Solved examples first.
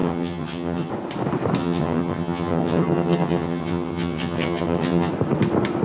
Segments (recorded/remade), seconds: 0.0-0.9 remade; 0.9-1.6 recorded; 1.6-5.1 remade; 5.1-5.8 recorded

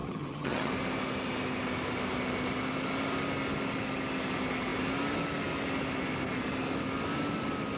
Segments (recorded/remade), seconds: 0.0-0.7 remade; 0.7-7.8 recorded